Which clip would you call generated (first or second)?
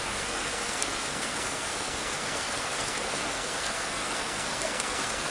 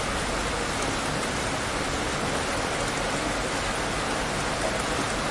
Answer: first